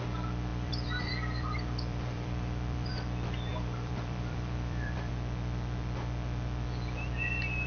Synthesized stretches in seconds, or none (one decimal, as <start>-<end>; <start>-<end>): 0.5-2.9; 3.5-5.1